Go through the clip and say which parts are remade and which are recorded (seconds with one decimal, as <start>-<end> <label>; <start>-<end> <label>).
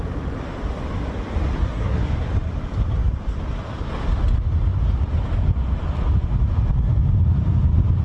0.0-1.5 recorded; 1.5-2.1 remade; 2.1-8.0 recorded